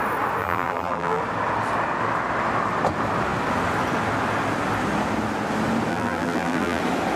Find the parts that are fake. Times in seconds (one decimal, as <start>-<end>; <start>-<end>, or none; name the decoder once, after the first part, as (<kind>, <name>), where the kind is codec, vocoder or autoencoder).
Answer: 0.4-1.2 (vocoder, BigVGAN v2); 5.9-6.8